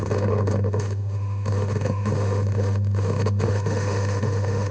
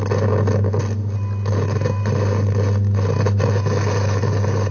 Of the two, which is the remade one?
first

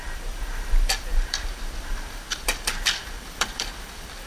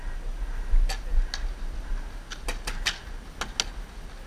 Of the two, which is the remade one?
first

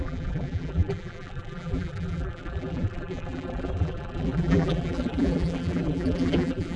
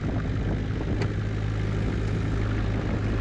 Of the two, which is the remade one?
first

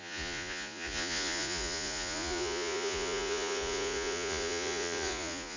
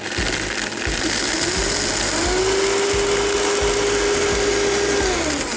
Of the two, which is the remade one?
first